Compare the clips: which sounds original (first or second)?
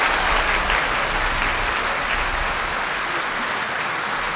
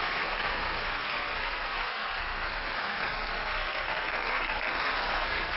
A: first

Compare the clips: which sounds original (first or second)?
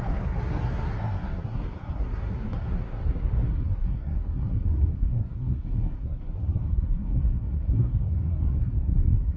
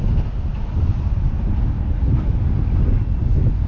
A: second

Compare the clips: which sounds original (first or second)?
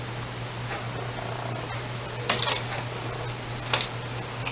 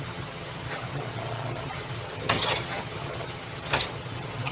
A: first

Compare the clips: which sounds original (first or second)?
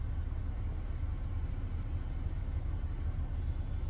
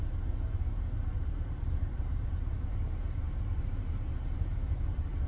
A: first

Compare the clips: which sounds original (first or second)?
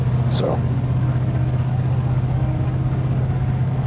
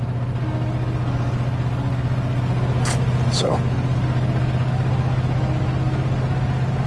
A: second